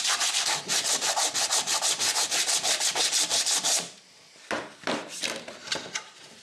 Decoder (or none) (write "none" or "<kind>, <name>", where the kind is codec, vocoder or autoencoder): vocoder, BigVGAN v2